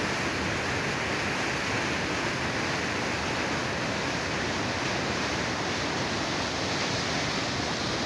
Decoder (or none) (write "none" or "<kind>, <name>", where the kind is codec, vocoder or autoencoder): none